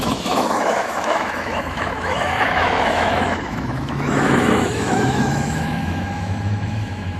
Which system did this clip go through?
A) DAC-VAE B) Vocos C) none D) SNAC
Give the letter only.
A